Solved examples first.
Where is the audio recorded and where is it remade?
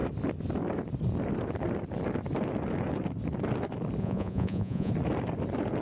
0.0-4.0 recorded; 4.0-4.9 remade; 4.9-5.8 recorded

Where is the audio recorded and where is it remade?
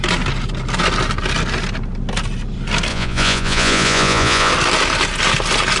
0.0-2.9 recorded; 2.9-4.5 remade; 4.5-5.8 recorded